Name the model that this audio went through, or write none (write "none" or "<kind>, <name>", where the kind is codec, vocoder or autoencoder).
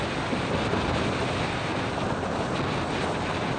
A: none